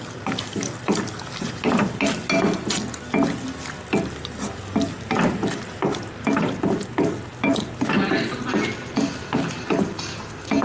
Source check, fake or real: real